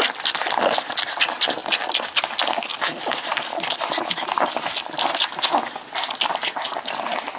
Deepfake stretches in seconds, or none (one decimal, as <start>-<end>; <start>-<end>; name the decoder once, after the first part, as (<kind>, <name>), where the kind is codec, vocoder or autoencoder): none